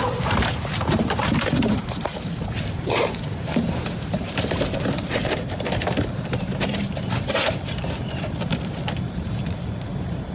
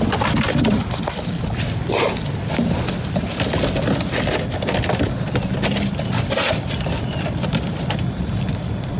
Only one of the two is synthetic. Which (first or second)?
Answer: first